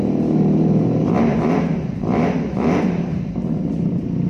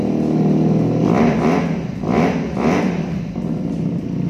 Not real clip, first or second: first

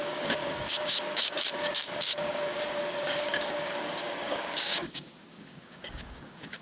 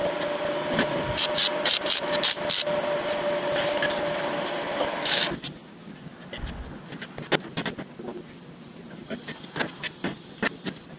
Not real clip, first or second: first